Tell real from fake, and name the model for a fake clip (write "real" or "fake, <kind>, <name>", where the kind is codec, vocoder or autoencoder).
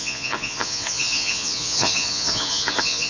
fake, vocoder, Vocos